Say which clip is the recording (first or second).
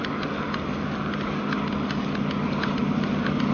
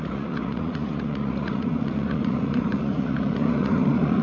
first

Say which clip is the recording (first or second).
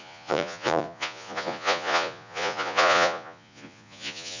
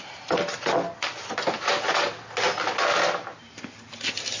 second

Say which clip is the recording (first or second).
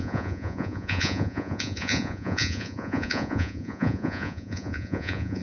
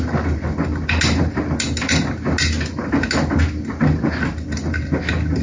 second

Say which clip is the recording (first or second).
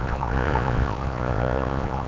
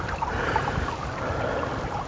second